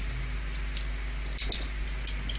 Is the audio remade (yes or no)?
no